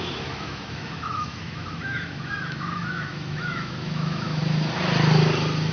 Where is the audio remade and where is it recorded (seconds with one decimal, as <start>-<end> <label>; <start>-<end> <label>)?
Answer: 0.0-4.4 remade; 4.4-5.7 recorded

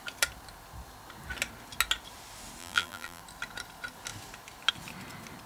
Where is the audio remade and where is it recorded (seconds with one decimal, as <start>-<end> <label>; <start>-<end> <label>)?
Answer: 0.0-2.6 recorded; 2.6-3.2 remade; 3.2-5.5 recorded

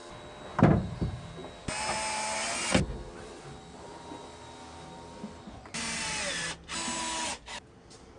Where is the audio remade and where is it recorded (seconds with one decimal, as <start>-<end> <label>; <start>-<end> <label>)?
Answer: 0.0-8.2 recorded

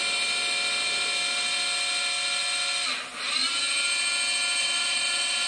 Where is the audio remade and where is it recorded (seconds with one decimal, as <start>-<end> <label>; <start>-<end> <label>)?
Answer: 0.0-4.6 recorded; 4.6-5.5 remade

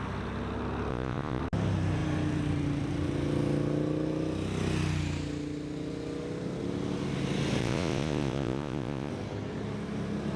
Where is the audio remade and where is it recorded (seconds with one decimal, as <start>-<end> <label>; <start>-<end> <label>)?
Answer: 0.0-0.9 recorded; 0.9-1.4 remade; 1.4-7.6 recorded; 7.6-9.1 remade; 9.1-10.4 recorded

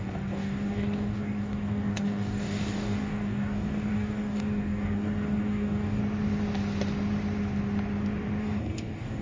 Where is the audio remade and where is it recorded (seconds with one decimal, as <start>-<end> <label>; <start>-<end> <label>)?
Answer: 0.0-6.0 remade; 6.0-8.4 recorded; 8.4-9.2 remade

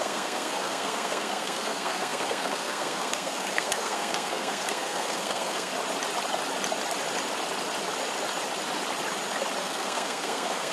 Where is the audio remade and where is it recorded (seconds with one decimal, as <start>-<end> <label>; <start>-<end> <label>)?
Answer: 0.0-5.7 remade; 5.7-9.6 recorded; 9.6-10.7 remade